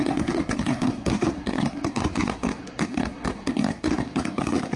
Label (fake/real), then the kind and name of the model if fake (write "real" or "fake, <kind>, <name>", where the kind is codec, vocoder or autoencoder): fake, codec, SNAC